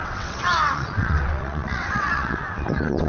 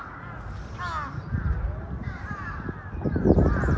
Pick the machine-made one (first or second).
first